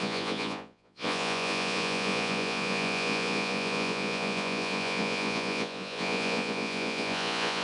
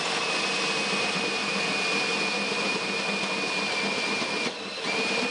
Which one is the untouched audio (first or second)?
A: second